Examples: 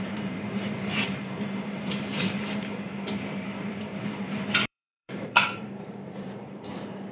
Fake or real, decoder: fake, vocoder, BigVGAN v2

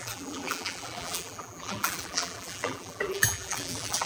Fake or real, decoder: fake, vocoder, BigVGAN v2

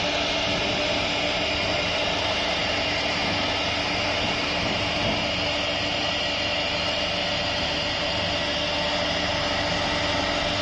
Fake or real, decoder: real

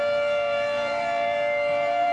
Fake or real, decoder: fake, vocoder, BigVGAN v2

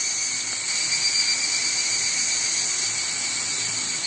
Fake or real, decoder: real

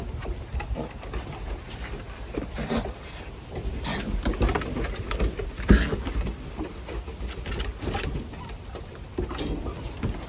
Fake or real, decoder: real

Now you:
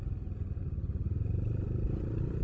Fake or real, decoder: real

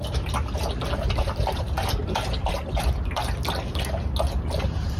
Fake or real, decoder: real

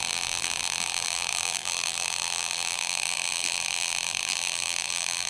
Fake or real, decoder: fake, vocoder, BigVGAN v2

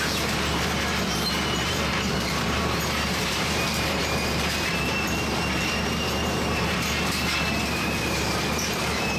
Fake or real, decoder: fake, vocoder, BigVGAN v2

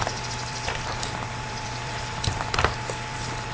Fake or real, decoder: fake, vocoder, BigVGAN v2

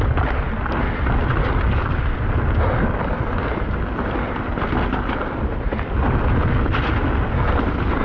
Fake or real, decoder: real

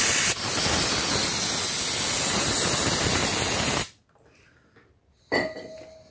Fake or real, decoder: real